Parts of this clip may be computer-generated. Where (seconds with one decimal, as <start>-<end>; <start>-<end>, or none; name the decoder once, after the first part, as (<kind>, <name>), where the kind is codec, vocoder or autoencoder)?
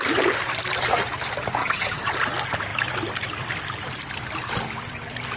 1.6-2.1 (vocoder, HiFi-GAN)